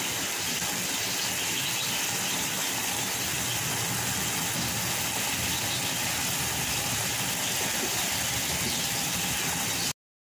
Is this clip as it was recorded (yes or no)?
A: yes